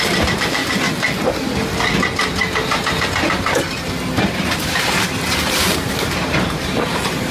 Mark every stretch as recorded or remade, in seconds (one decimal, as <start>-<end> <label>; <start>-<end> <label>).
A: 0.0-0.6 remade; 0.6-4.2 recorded; 4.2-7.3 remade